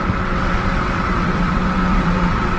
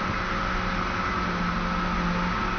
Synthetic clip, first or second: first